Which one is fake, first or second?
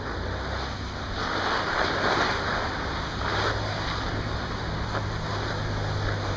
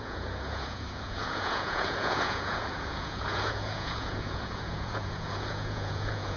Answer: second